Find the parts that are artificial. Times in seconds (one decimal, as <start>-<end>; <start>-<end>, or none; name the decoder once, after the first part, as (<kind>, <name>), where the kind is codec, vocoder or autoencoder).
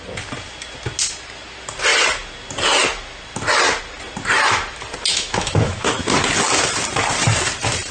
5.1-6.0 (autoencoder, DAC-VAE)